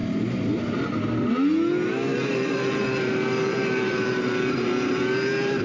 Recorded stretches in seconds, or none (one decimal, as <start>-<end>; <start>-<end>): 0.6-2.1